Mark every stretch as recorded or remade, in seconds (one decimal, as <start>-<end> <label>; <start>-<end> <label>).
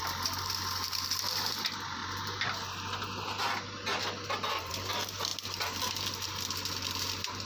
0.0-7.5 recorded